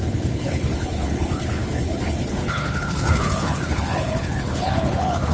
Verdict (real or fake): fake